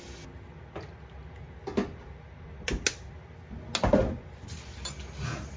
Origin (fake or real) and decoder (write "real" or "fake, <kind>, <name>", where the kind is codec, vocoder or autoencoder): real